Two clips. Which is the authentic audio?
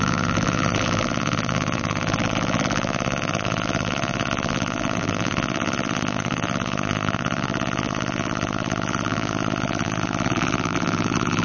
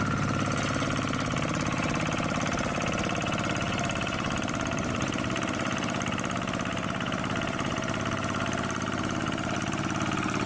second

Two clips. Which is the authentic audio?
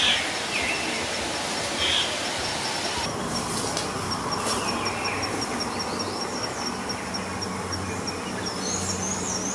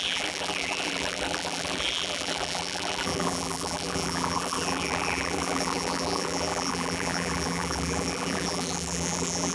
first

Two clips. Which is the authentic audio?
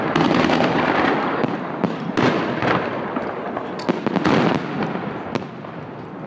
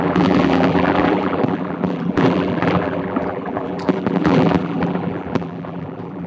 first